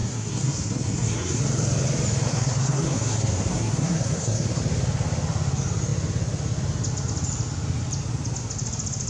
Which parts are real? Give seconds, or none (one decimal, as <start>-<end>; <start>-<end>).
1.4-2.3; 4.6-9.1